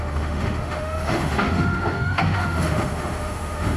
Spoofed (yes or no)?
yes